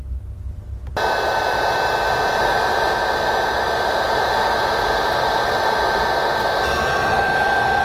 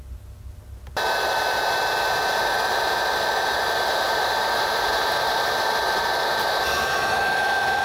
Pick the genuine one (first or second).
first